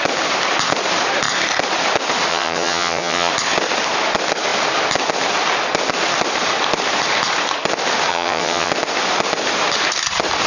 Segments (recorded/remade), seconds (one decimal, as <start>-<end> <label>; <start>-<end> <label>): 0.0-2.3 recorded; 2.3-3.3 remade; 3.3-8.1 recorded; 8.1-8.7 remade; 8.7-10.5 recorded